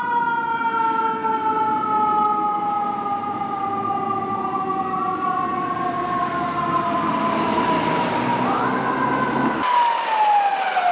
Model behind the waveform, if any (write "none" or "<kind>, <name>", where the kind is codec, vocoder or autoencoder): none